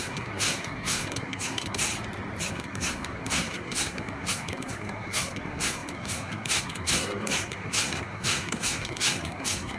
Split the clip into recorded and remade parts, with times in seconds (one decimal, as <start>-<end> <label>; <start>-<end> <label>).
0.0-1.9 remade; 1.9-2.5 recorded; 2.5-9.8 remade